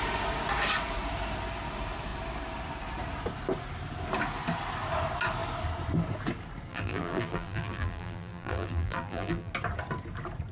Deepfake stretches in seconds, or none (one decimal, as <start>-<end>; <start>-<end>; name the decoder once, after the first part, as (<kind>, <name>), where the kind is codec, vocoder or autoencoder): 6.7-9.5 (vocoder, BigVGAN v2)